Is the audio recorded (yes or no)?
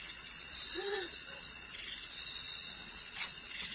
no